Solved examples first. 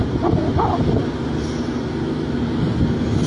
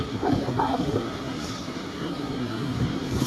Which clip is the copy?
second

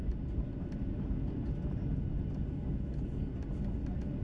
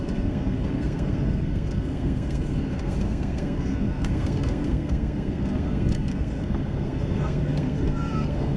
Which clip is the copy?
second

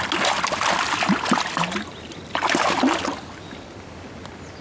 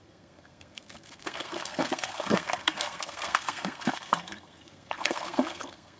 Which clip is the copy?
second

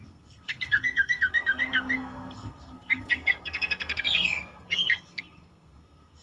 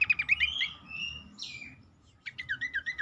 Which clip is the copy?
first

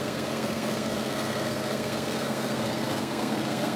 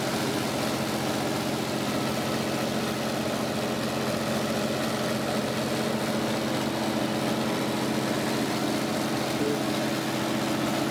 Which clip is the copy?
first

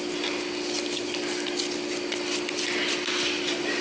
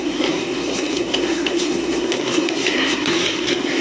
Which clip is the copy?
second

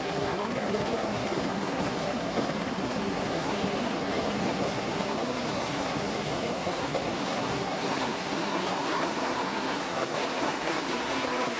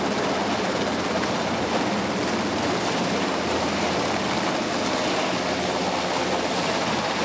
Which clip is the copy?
first